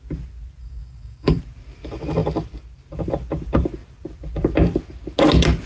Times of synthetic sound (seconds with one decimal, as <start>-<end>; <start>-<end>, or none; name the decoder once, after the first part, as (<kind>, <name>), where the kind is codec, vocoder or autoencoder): 0.6-1.4 (codec, DAC)